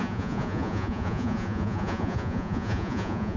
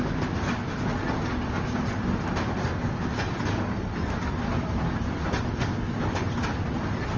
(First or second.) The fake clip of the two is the first